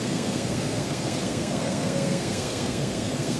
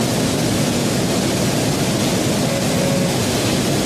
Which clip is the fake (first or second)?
first